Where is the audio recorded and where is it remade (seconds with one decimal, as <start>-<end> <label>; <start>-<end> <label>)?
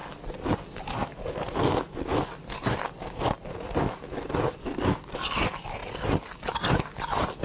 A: 0.0-7.4 recorded